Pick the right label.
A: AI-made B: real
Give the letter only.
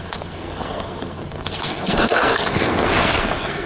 A